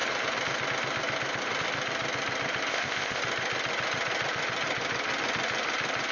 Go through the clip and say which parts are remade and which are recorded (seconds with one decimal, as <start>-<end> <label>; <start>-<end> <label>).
0.0-2.7 recorded; 2.7-3.2 remade; 3.2-6.1 recorded